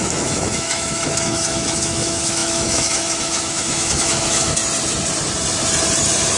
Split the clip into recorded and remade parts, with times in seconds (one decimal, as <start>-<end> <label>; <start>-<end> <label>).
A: 0.0-4.6 remade; 4.6-6.4 recorded